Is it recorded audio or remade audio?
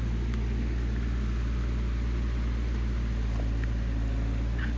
recorded